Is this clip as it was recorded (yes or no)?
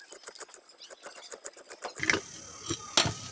yes